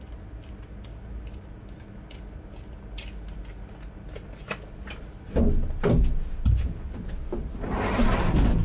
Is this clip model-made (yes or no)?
no